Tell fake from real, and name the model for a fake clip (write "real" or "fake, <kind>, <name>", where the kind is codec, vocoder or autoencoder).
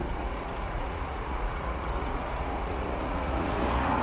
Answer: fake, vocoder, Vocos